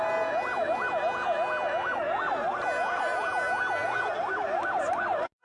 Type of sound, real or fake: real